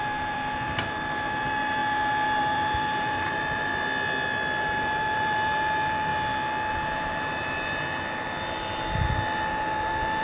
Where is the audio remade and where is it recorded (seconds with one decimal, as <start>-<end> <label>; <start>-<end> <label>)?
0.0-3.7 remade; 3.7-4.6 recorded; 4.6-6.1 remade; 6.1-6.7 recorded; 6.7-10.2 remade